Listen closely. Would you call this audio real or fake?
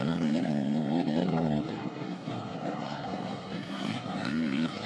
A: fake